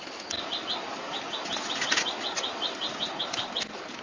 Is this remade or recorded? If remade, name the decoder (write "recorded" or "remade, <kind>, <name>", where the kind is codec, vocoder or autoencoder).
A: recorded